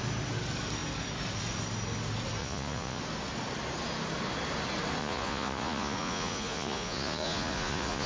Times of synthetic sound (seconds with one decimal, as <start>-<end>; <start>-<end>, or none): 2.4-3.0; 5.0-8.1